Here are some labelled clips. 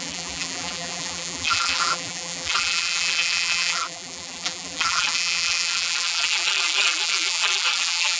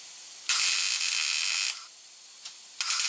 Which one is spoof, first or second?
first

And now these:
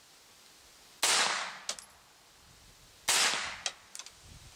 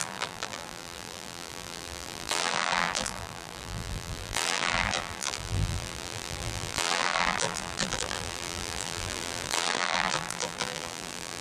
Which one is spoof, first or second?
second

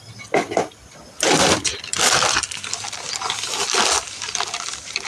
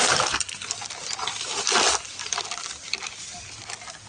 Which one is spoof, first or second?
second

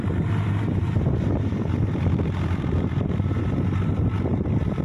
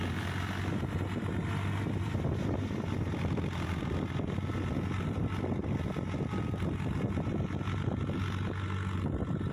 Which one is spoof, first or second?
first